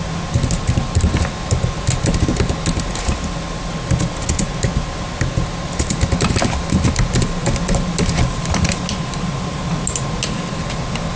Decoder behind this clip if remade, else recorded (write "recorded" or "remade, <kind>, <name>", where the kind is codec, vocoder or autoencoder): recorded